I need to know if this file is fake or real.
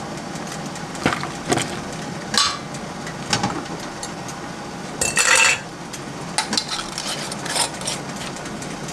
real